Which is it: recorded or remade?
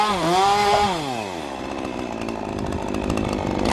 recorded